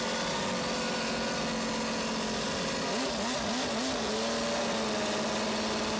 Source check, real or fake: real